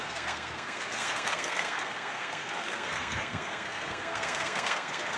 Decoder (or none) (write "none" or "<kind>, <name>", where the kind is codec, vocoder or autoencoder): codec, SNAC